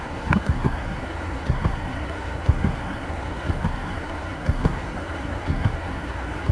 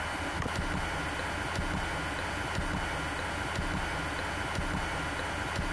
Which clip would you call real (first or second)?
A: second